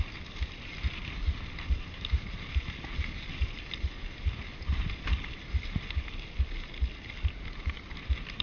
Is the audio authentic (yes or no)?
yes